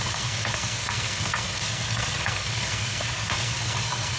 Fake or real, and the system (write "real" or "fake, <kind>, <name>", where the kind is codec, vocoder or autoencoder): fake, codec, SNAC